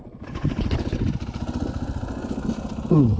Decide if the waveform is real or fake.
real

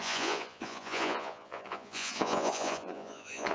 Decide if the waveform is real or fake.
fake